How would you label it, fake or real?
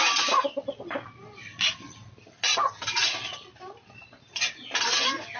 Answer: real